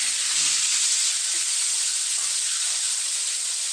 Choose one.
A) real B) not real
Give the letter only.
A